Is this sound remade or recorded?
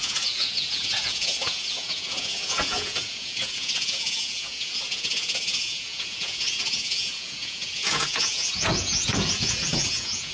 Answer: remade